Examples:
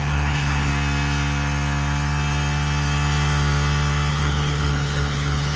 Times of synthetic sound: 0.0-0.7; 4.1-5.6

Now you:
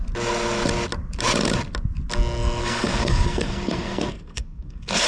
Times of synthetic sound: 2.6-5.1

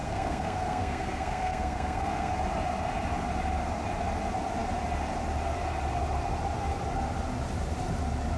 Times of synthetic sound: 0.0-2.3

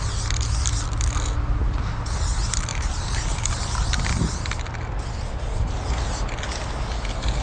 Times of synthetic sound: 2.7-4.0

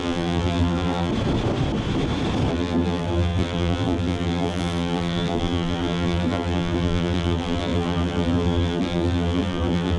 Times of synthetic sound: 0.0-1.1; 2.5-10.0

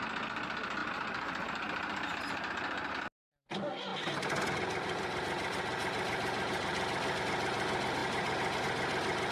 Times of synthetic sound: 0.8-2.9